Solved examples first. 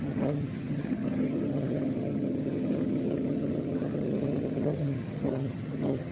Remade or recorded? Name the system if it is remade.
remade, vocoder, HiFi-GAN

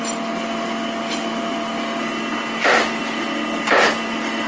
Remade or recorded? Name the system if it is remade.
recorded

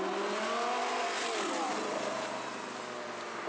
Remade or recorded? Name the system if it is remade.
recorded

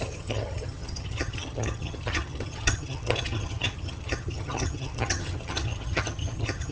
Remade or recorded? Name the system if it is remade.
remade, vocoder, HiFi-GAN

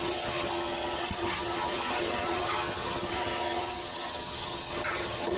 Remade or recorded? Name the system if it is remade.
remade, vocoder, HiFi-GAN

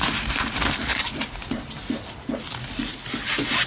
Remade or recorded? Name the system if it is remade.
recorded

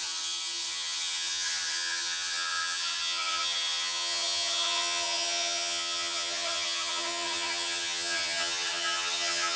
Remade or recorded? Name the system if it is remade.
remade, vocoder, HiFi-GAN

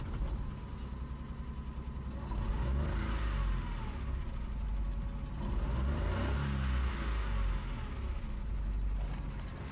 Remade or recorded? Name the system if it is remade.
recorded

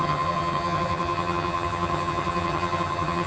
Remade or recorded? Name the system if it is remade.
remade, vocoder, HiFi-GAN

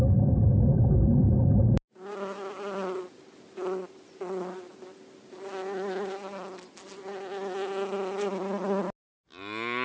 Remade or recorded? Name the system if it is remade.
recorded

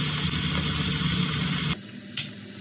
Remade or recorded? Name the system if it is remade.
recorded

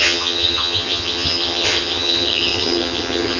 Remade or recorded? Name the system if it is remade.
remade, vocoder, HiFi-GAN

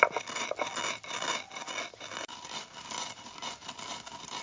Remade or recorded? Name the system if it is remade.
recorded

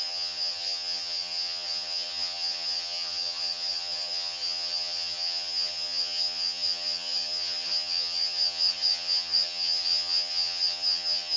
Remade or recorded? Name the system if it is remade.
remade, vocoder, HiFi-GAN